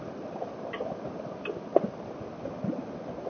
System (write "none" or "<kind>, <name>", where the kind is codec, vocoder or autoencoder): none